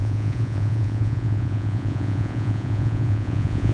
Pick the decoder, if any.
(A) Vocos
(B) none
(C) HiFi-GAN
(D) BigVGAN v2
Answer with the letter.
A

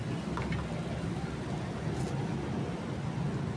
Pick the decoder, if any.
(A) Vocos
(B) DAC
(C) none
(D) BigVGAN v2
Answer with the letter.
C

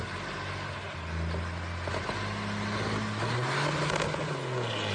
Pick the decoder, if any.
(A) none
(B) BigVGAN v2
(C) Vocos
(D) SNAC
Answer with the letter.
A